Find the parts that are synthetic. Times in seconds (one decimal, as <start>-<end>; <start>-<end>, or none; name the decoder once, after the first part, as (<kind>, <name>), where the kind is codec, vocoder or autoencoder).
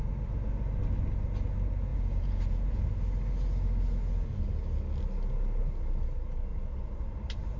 1.9-2.8 (vocoder, Vocos)